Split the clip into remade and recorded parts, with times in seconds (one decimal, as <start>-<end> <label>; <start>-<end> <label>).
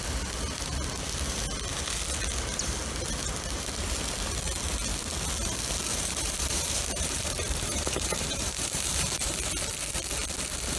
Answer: 0.0-5.9 recorded; 5.9-9.3 remade; 9.3-10.8 recorded